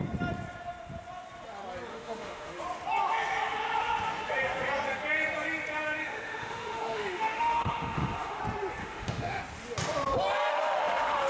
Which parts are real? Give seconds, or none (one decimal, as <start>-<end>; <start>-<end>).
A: 0.0-1.9; 2.6-6.0; 8.4-8.8; 9.4-10.5